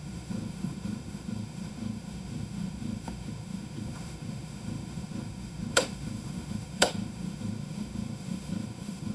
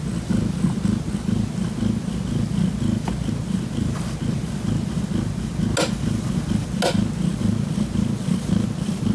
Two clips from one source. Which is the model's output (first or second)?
first